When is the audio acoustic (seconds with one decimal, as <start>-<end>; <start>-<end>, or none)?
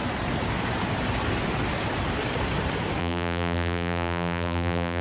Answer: 0.0-3.0